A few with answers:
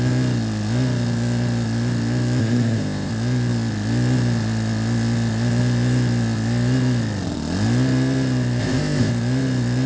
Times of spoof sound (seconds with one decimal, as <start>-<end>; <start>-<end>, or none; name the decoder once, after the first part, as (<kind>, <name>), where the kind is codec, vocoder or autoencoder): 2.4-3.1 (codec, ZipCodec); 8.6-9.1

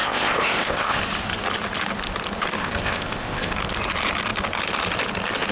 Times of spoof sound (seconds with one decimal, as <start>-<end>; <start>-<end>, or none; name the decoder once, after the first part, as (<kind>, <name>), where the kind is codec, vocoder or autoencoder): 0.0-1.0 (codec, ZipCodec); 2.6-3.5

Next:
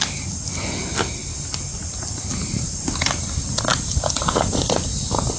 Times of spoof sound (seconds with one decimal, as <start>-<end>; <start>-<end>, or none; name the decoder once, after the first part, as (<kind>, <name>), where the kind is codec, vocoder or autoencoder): none

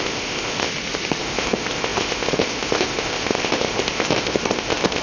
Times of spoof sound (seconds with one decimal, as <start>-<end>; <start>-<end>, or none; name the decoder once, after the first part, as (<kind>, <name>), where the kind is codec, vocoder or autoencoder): 0.0-0.7 (codec, ZipCodec); 1.2-5.0

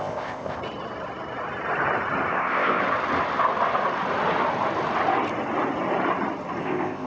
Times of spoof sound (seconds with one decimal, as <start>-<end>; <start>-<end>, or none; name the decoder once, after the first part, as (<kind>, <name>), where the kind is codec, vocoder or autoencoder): 0.0-0.6 (codec, ZipCodec); 2.3-2.8; 6.6-7.1

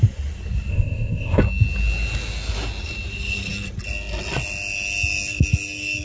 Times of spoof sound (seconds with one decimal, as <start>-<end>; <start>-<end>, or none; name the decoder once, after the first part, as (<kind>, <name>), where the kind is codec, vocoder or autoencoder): 0.7-1.4 (codec, ZipCodec)

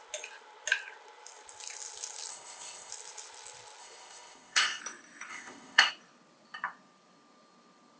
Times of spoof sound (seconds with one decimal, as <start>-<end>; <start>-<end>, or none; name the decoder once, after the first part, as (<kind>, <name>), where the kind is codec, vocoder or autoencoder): 2.3-2.9 (codec, ZipCodec); 3.8-4.8; 5.3-5.9

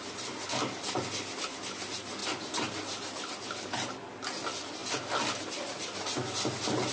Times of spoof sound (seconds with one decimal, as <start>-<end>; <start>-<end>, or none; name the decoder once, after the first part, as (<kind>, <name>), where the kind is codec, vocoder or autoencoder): none